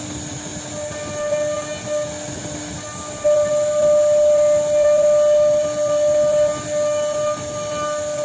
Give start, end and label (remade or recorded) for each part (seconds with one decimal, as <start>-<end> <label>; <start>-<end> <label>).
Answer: 0.0-8.2 recorded